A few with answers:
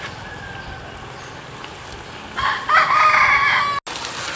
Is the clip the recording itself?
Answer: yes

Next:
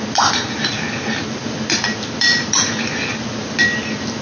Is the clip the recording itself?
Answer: yes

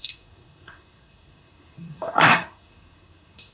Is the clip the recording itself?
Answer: no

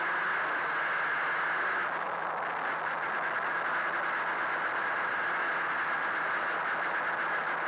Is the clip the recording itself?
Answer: yes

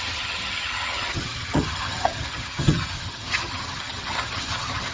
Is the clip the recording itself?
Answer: no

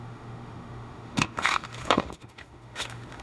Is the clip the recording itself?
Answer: no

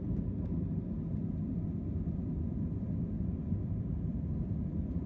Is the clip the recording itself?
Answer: yes